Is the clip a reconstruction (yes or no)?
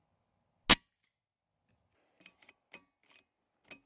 no